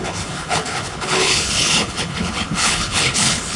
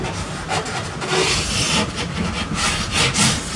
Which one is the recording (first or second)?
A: second